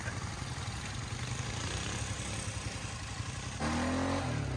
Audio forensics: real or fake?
real